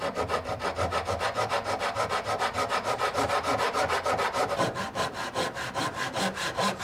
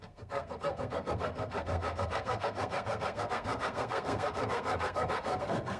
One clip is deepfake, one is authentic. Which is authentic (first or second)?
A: first